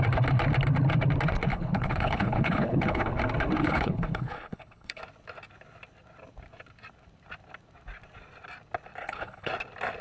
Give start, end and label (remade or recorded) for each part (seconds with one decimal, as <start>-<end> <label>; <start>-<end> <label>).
0.0-1.5 recorded; 1.5-3.1 remade; 3.1-3.6 recorded; 3.6-5.0 remade; 5.0-9.0 recorded; 9.0-9.5 remade; 9.5-10.0 recorded